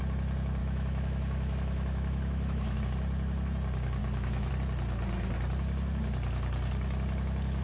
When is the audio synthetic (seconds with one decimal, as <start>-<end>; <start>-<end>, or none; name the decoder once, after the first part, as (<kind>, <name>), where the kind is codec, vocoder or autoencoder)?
0.6-2.8 (autoencoder, DAC-VAE); 4.0-4.5